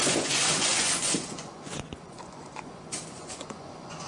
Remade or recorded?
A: remade